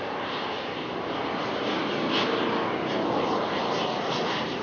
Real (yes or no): yes